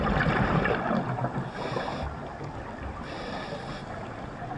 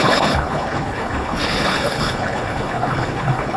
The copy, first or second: second